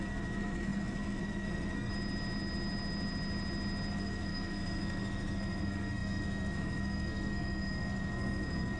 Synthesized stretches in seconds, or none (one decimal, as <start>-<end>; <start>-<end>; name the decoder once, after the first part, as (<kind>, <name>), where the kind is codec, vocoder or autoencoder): 0.0-1.9 (codec, SNAC); 3.9-8.8